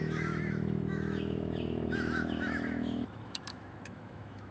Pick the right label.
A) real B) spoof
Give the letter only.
B